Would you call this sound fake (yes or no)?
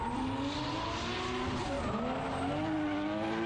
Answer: no